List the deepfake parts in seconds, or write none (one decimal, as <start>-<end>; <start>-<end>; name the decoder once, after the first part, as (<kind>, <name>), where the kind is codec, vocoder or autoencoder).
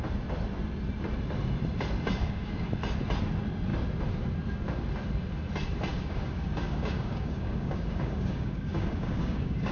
2.2-2.7 (codec, DAC); 5.9-9.7